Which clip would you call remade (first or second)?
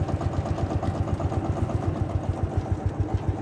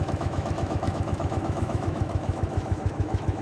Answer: second